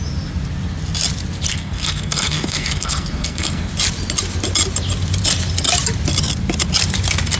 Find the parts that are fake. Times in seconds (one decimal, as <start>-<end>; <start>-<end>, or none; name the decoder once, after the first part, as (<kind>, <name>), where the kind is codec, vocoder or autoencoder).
1.5-3.7 (codec, SNAC)

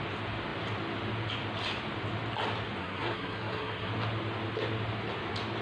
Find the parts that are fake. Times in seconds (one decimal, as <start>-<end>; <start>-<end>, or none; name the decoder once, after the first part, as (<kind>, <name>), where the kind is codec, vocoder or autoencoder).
2.8-3.9 (codec, SNAC)

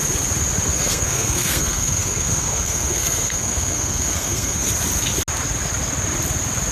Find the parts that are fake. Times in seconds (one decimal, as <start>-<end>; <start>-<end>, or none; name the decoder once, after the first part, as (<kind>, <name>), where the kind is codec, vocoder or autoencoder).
0.7-4.7 (codec, SNAC)

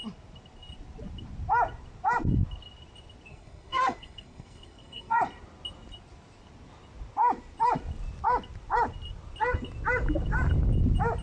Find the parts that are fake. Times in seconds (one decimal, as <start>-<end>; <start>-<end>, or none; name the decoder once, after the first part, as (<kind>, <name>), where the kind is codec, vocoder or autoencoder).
3.3-5.2 (codec, SNAC)

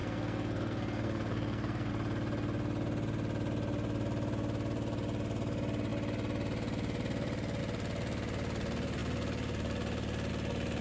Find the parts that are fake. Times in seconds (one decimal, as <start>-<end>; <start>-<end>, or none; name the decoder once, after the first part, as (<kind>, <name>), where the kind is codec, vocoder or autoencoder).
0.0-1.9 (codec, SNAC)

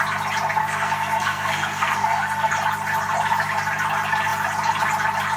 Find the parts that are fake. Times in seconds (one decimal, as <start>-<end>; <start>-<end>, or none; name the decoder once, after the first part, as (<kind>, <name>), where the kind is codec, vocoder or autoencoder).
0.6-2.5 (codec, SNAC)

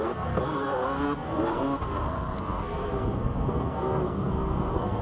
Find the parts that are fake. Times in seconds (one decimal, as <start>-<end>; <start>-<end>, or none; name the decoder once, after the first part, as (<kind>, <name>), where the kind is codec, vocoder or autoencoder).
0.0-5.0 (codec, SNAC)

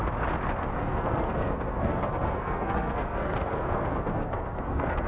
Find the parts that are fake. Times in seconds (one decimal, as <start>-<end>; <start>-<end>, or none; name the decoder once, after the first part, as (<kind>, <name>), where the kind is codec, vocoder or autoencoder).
0.7-5.1 (codec, SNAC)